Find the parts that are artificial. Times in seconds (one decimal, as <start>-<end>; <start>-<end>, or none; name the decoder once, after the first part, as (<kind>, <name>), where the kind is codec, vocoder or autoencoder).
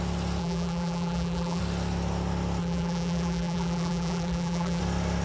0.4-1.6 (vocoder, BigVGAN v2); 2.6-4.8